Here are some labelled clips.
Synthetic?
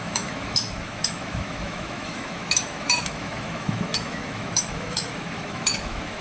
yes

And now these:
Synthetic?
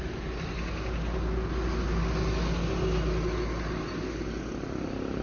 no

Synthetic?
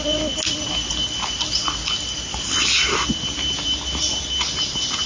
no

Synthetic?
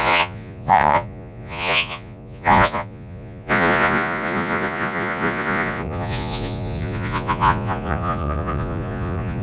yes